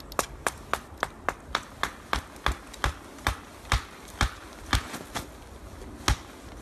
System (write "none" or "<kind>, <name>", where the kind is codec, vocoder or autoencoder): none